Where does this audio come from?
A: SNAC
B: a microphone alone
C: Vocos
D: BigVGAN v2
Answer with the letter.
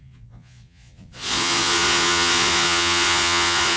C